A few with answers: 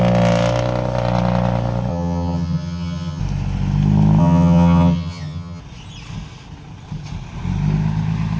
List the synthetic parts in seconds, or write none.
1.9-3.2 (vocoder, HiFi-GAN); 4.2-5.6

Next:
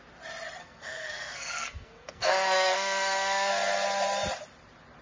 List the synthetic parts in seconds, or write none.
0.6-3.5 (codec, SNAC)

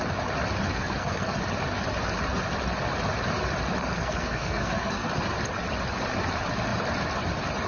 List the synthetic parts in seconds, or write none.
0.7-1.3 (codec, SNAC); 3.8-5.1

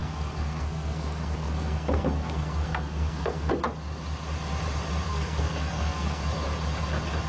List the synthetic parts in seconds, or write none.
0.0-3.5 (codec, SNAC); 5.1-6.2

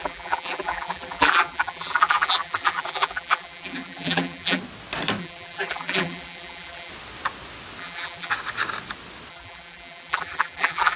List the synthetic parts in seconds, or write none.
0.0-4.6 (vocoder, BigVGAN v2); 5.2-6.9; 7.8-8.3; 9.3-11.0

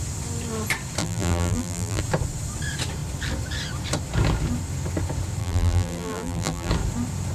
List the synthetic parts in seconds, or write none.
1.0-2.0 (vocoder, BigVGAN v2); 5.4-6.7

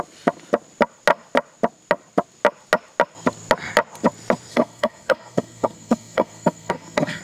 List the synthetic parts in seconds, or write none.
4.5-7.2 (codec, SNAC)

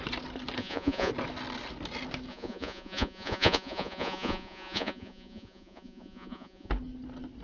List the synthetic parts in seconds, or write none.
0.6-1.1 (vocoder, Vocos); 2.3-6.7